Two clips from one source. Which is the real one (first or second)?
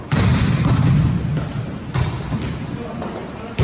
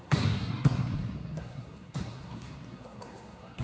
first